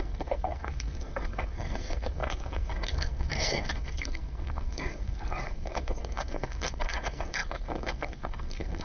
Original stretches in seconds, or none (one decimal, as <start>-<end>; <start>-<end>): none